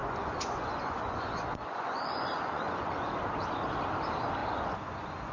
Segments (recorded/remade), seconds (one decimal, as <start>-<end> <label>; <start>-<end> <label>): 0.0-3.2 remade; 3.2-4.4 recorded; 4.4-5.3 remade

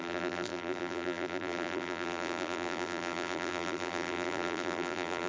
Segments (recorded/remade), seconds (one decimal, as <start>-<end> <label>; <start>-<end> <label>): 0.0-5.3 remade

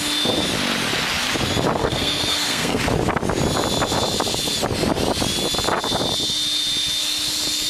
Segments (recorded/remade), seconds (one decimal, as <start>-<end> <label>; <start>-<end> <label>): 0.0-1.8 recorded; 1.8-2.8 remade; 2.8-7.7 recorded

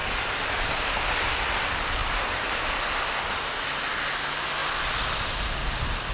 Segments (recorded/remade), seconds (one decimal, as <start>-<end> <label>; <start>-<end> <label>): 0.0-0.9 remade; 0.9-2.0 recorded; 2.0-2.9 remade; 2.9-6.1 recorded

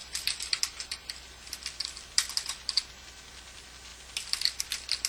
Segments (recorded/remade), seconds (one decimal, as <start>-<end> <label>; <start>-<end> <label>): 0.0-2.9 remade; 2.9-3.9 recorded; 3.9-4.6 remade; 4.6-5.1 recorded

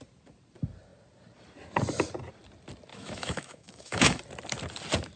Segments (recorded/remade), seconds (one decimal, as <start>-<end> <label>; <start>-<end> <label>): 0.0-2.9 recorded; 2.9-4.2 remade; 4.2-5.2 recorded